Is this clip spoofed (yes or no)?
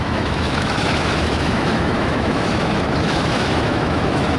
yes